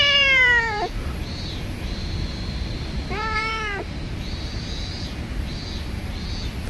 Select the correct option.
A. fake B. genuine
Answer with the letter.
A